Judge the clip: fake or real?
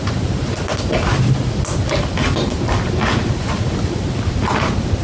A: real